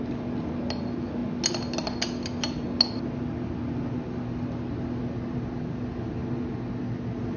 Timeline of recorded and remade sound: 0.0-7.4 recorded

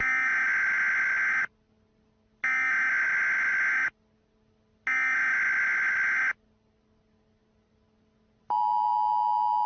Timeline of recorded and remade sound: 0.0-9.7 recorded

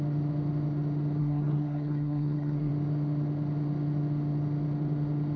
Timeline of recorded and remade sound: 0.0-1.2 recorded; 1.2-2.7 remade; 2.7-5.4 recorded